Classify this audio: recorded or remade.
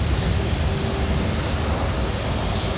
recorded